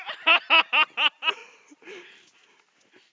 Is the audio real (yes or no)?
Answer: yes